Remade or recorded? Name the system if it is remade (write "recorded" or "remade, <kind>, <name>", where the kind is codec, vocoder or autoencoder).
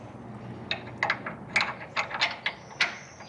recorded